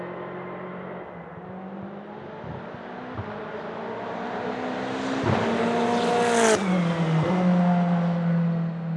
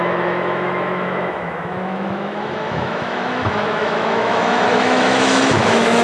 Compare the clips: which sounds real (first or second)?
first